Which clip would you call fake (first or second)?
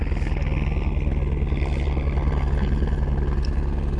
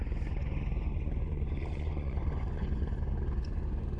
second